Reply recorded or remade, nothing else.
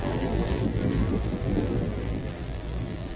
remade